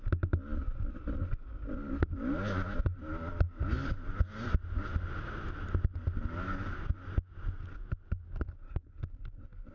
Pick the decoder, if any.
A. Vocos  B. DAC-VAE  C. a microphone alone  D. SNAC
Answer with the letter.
C